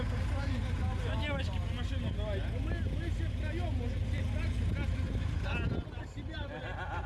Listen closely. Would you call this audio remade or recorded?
recorded